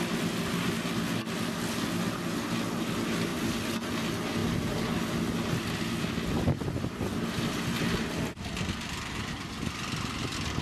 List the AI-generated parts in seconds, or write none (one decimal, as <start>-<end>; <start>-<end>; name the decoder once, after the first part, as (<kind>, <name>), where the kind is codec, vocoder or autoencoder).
none